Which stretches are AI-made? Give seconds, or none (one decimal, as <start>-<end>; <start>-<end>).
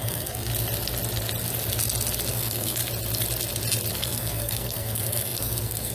0.0-0.5; 2.3-2.8; 3.9-5.9